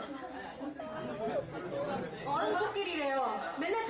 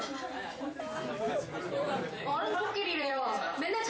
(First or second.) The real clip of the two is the first